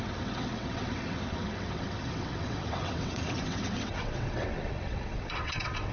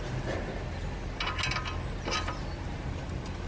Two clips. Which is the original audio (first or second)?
second